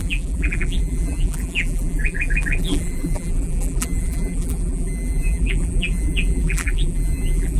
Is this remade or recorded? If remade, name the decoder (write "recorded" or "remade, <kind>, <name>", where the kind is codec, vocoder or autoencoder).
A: remade, vocoder, BigVGAN v2